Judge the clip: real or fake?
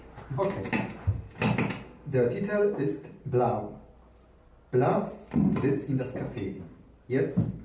real